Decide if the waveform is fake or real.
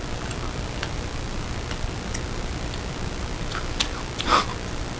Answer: real